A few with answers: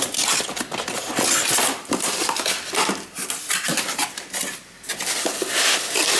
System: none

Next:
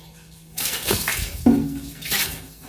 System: codec, SNAC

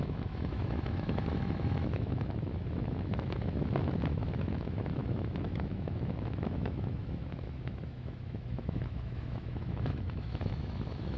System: autoencoder, DAC-VAE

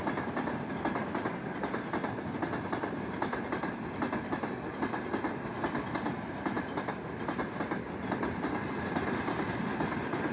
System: none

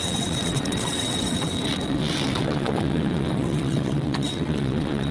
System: vocoder, WaveNeXt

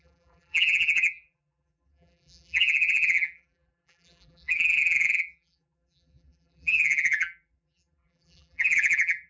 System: vocoder, BigVGAN v2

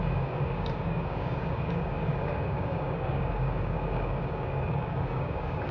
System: codec, DAC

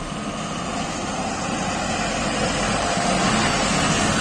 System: none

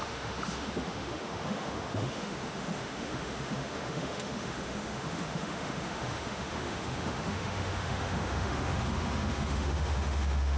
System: autoencoder, DAC-VAE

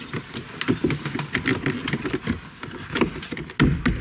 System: none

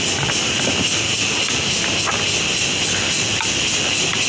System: none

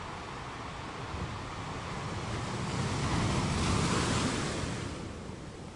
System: none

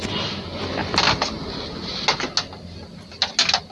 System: none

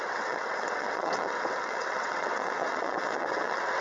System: vocoder, WaveNeXt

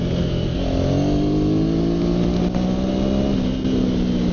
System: none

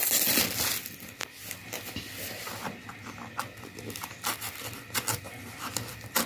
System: none